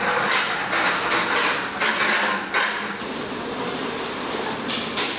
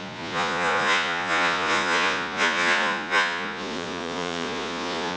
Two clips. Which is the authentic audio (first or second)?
first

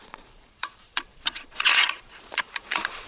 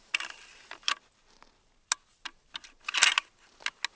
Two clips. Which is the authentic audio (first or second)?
second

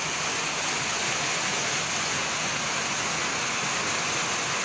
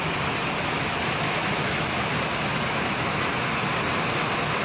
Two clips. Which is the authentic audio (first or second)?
second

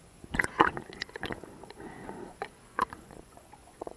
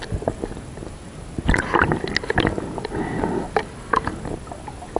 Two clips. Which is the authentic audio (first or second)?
second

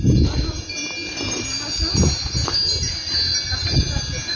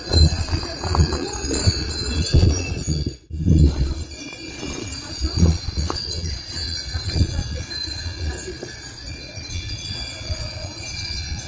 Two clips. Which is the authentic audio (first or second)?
first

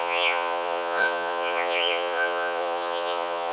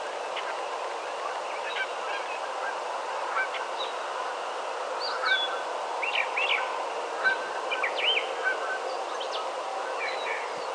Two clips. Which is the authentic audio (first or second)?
second